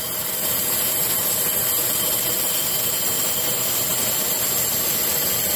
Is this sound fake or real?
real